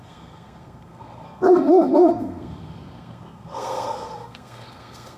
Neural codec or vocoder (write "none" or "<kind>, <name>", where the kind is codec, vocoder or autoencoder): codec, SNAC